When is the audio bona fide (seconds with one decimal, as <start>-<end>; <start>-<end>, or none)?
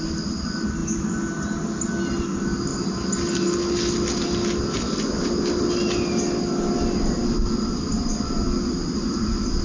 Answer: 0.0-9.6